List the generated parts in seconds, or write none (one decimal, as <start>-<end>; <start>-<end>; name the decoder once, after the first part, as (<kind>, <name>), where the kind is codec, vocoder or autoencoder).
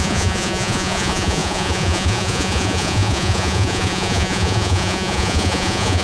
0.0-6.0 (vocoder, Vocos)